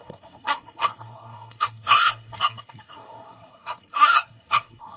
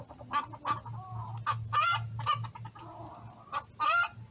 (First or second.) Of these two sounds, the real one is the second